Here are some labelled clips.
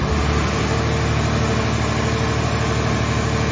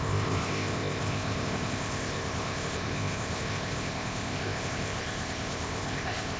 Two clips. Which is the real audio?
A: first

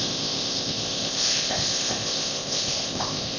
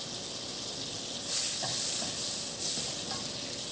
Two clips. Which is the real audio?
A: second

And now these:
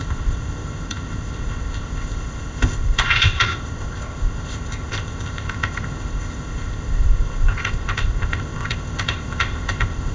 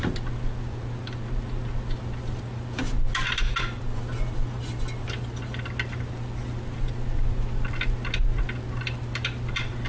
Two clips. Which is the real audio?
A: second